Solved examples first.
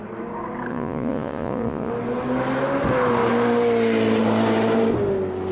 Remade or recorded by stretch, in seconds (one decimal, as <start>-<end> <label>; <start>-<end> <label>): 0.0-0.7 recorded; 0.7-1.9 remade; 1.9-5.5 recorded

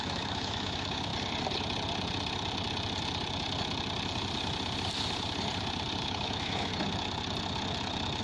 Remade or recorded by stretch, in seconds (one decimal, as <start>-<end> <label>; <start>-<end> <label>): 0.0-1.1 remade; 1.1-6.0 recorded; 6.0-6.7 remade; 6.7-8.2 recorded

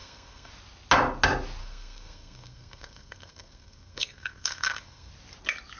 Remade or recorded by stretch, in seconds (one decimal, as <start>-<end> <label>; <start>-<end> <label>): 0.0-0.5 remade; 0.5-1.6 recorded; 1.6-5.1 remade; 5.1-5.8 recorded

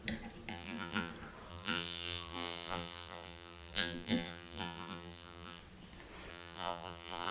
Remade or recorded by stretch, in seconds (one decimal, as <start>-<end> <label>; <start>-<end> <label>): 0.0-0.5 recorded; 0.5-1.1 remade; 1.1-1.5 recorded; 1.5-5.6 remade; 5.6-6.3 recorded; 6.3-7.3 remade